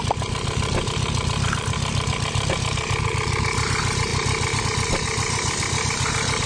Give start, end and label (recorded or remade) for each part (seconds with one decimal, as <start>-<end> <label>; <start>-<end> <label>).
0.0-6.5 recorded